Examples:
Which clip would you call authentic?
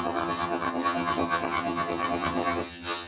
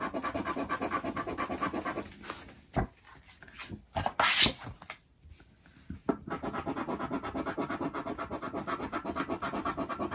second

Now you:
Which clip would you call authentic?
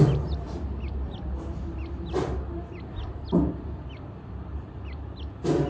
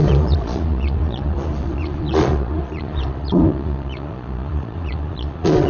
first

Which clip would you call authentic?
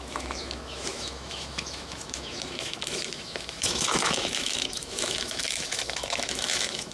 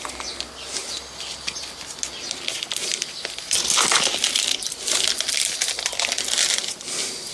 second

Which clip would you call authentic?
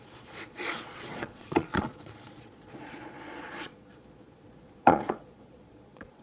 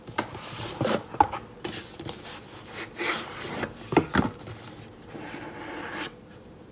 second